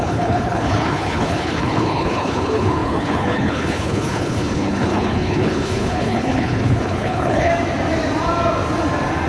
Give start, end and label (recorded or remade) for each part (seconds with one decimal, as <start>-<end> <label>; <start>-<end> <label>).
0.0-7.5 remade; 7.5-9.3 recorded